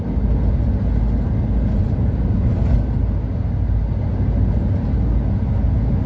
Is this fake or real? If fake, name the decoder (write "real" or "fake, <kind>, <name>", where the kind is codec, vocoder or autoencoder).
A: real